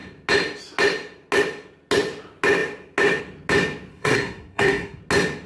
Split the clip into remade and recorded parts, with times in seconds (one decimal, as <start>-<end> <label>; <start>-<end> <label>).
0.0-3.9 recorded; 3.9-5.0 remade; 5.0-5.5 recorded